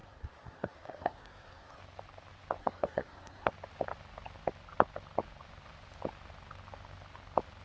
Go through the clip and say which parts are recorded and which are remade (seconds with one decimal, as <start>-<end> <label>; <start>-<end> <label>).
0.0-1.8 remade; 1.8-2.6 recorded; 2.6-3.5 remade; 3.5-7.6 recorded